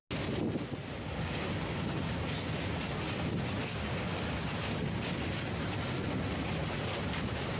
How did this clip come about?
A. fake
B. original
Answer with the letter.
B